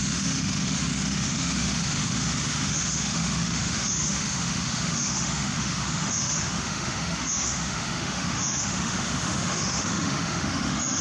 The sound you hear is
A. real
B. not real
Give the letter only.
B